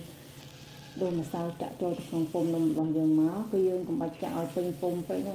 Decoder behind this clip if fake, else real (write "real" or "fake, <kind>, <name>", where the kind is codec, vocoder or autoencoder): real